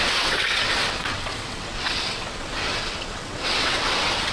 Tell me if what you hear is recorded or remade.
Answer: remade